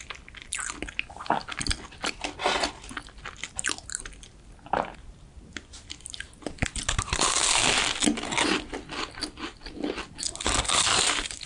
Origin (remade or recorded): recorded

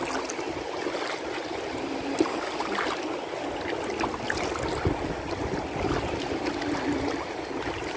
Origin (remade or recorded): recorded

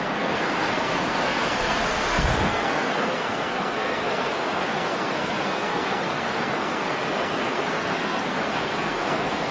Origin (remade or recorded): remade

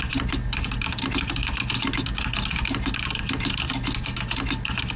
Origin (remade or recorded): recorded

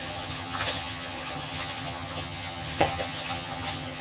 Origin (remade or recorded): remade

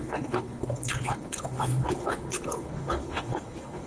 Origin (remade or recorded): remade